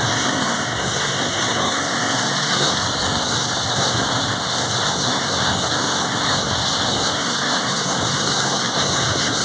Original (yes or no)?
no